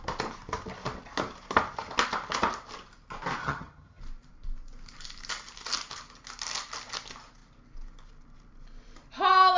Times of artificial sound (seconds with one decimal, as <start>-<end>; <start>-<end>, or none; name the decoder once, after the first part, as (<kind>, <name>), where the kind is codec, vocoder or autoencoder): 3.4-4.0 (vocoder, HiFi-GAN)